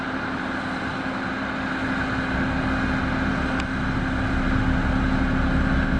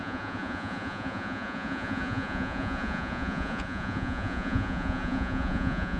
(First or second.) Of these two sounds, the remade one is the second